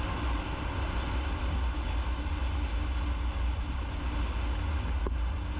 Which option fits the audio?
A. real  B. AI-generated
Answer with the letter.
A